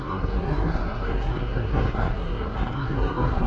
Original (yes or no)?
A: no